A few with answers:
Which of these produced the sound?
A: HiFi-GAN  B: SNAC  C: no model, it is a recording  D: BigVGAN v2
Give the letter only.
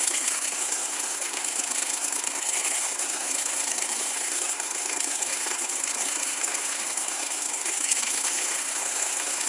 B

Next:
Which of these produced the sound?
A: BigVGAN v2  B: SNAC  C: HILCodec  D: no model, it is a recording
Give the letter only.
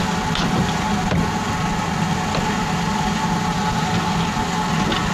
D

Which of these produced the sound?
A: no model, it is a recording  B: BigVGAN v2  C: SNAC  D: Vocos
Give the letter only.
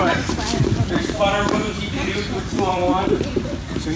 B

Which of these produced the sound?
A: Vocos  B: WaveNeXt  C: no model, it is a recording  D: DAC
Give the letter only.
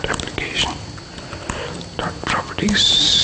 C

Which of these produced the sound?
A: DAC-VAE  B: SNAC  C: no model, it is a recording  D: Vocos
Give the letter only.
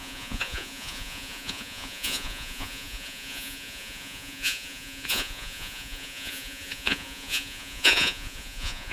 D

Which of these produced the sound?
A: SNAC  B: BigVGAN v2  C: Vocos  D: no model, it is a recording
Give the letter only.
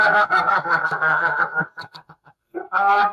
A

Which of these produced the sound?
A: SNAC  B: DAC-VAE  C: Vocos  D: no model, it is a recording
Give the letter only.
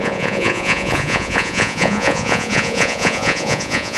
C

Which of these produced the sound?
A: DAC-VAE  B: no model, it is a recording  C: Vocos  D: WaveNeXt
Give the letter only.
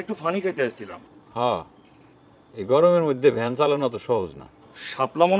C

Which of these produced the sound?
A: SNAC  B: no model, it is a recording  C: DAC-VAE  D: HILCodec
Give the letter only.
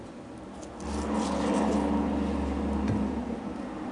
B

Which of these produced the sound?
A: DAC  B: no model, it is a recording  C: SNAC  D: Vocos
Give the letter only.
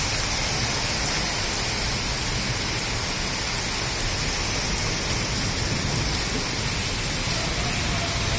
B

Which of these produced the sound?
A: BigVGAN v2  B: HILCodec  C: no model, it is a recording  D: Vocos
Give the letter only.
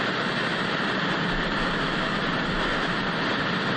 C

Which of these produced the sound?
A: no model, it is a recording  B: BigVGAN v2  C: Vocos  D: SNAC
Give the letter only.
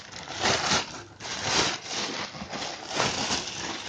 A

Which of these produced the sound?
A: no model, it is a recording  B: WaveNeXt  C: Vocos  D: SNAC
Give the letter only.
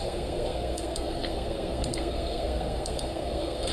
D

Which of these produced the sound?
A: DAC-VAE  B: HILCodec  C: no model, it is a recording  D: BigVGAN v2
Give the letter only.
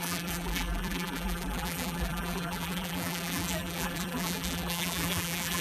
D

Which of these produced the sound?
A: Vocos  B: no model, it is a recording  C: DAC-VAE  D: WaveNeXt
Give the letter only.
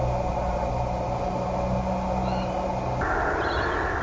B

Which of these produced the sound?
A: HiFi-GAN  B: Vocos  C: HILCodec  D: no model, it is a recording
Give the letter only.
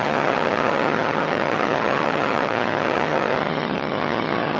A